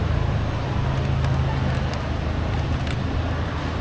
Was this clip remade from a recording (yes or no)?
no